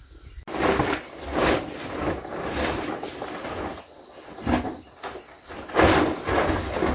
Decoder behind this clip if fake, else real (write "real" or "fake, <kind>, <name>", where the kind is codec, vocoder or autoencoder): real